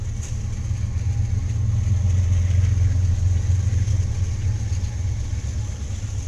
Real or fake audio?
real